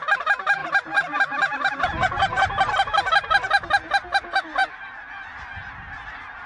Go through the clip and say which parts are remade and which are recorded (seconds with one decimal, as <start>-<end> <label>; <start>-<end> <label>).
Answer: 0.0-0.6 recorded; 0.6-1.7 remade; 1.7-6.5 recorded